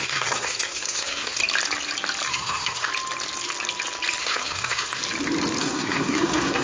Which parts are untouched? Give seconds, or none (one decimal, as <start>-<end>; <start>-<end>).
1.4-2.3; 2.9-4.2; 5.0-5.6